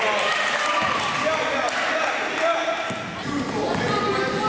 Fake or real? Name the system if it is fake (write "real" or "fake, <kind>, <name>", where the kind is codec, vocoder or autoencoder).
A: real